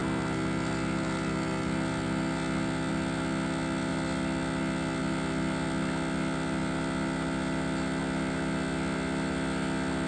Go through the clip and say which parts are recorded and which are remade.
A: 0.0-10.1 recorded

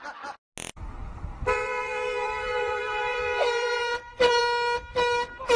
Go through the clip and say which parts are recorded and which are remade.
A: 0.0-1.0 recorded; 1.0-4.4 remade; 4.4-5.6 recorded

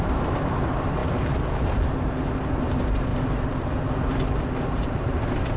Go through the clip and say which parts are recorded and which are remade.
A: 0.0-1.0 remade; 1.0-2.2 recorded; 2.2-3.1 remade; 3.1-4.6 recorded; 4.6-5.6 remade

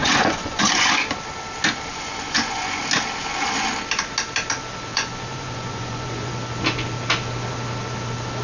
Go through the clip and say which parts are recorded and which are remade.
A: 0.0-1.0 remade; 1.0-1.9 recorded; 1.9-2.8 remade; 2.8-4.9 recorded; 4.9-6.3 remade; 6.3-8.4 recorded

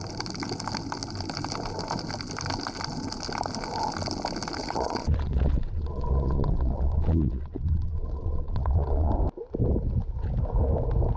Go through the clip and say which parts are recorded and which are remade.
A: 0.0-4.6 recorded; 4.6-9.1 remade; 9.1-11.2 recorded

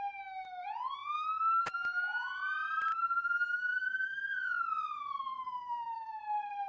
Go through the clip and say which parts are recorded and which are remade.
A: 0.0-1.0 recorded; 1.0-1.6 remade; 1.6-2.9 recorded; 2.9-6.2 remade; 6.2-6.7 recorded